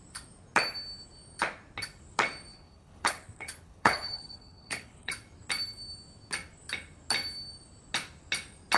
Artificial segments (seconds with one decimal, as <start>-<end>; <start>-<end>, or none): 2.5-5.1